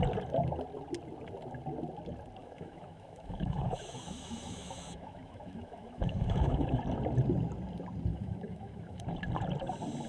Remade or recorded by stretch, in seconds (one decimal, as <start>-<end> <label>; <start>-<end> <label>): 0.0-2.4 recorded; 2.4-6.8 remade; 6.8-8.1 recorded; 8.1-9.0 remade; 9.0-10.1 recorded